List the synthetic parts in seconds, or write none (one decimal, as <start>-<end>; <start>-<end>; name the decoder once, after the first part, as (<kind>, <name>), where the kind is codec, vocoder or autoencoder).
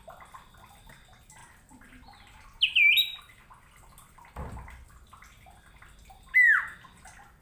none